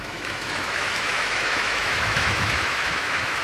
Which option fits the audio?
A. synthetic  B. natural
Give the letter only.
A